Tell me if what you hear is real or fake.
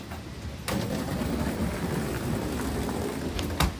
real